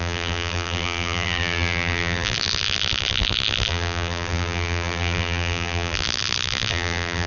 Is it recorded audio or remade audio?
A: remade